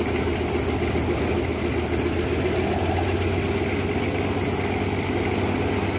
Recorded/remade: recorded